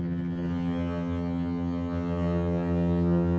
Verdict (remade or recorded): remade